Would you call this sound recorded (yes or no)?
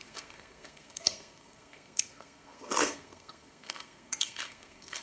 no